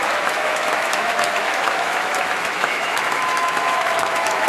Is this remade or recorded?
remade